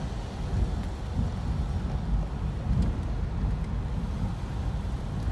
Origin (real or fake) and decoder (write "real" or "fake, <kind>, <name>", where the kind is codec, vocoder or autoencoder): real